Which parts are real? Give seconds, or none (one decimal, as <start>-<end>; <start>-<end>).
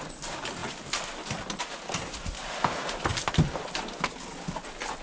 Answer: 0.0-5.0